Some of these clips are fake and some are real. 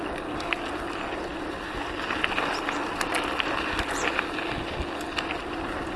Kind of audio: real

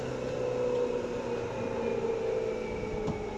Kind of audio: real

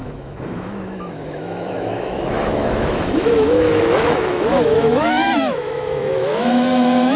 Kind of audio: fake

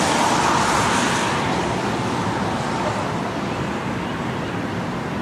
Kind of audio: fake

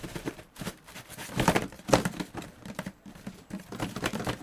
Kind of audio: fake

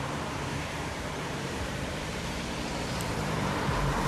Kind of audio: fake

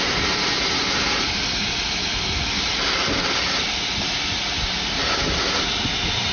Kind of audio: real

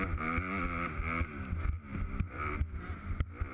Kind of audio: real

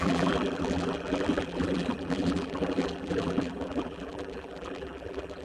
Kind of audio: fake